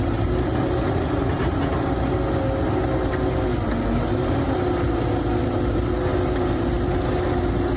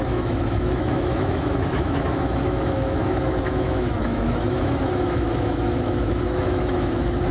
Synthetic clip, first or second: second